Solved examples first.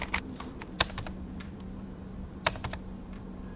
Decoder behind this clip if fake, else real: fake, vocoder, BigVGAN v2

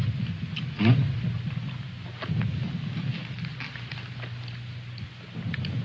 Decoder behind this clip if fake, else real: real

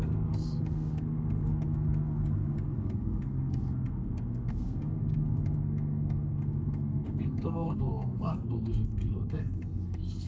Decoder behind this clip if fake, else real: fake, codec, SNAC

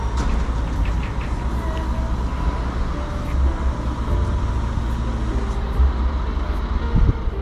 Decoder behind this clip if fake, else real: real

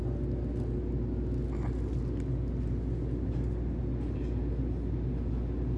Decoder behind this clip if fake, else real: real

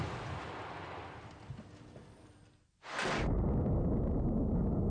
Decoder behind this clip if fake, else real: real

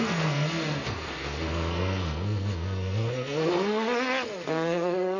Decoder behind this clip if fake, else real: fake, codec, SNAC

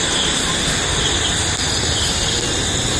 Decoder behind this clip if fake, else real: real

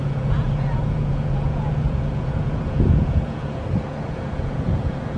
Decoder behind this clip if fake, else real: fake, vocoder, Vocos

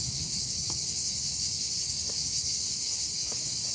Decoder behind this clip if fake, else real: fake, codec, DAC